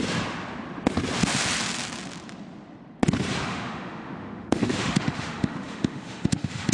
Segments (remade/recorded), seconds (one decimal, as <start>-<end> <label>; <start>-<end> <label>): 0.0-3.5 recorded; 3.5-6.7 remade

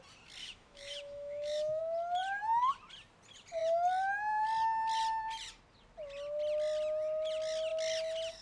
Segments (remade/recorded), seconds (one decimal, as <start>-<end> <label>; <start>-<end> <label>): 0.0-0.4 recorded; 0.4-1.8 remade; 1.8-8.4 recorded

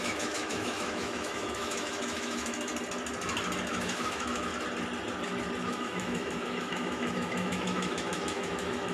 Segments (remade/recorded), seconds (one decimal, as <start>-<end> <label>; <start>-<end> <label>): 0.0-2.7 remade; 2.7-3.7 recorded; 3.7-4.5 remade; 4.5-5.6 recorded; 5.6-8.9 remade

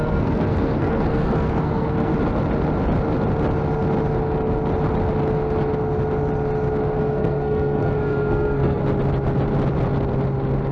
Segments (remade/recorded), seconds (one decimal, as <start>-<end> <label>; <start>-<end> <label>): 0.0-2.1 remade; 2.1-7.0 recorded; 7.0-8.8 remade; 8.8-10.7 recorded

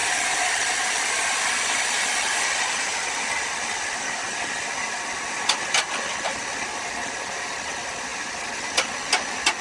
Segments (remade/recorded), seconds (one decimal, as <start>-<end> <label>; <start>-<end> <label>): 0.0-9.6 recorded